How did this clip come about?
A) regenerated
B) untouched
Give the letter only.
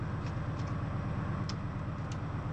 B